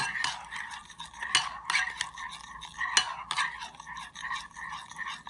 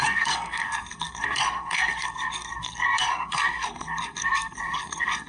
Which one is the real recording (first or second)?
first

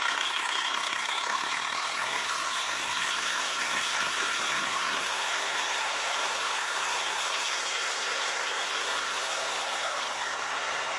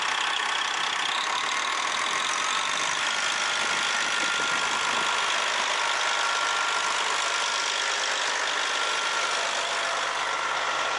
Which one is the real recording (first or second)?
second